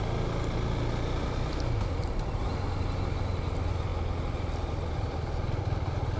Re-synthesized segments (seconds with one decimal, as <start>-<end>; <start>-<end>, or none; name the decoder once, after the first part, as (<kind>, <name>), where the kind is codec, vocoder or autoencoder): none